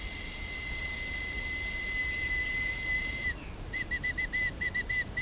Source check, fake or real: fake